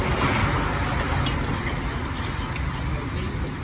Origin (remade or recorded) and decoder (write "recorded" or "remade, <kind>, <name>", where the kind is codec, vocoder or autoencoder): recorded